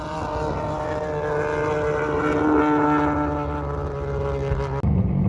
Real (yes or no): yes